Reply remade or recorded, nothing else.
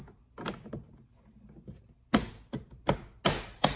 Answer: recorded